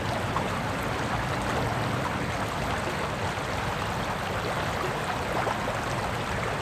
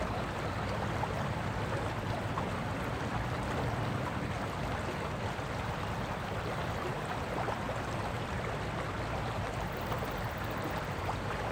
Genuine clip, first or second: first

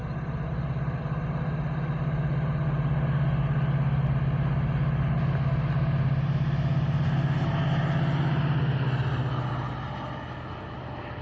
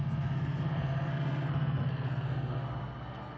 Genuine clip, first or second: first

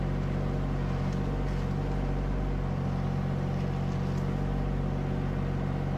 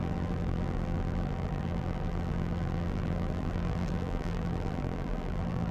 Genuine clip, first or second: first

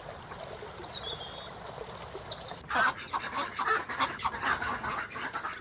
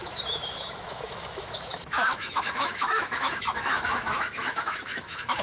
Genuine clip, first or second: first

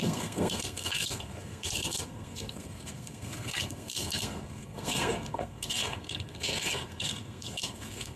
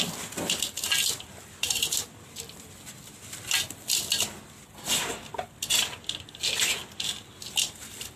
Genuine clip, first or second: second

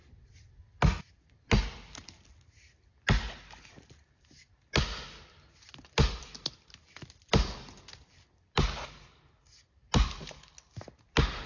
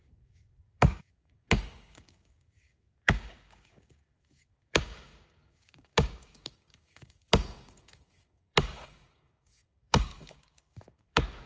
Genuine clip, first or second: first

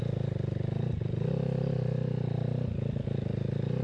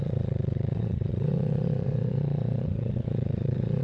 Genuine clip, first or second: first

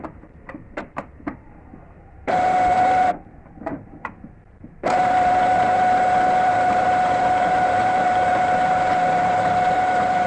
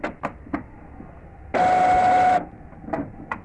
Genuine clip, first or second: second